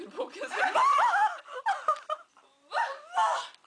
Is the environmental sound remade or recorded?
recorded